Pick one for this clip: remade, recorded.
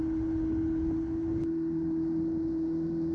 recorded